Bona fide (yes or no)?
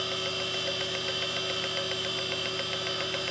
yes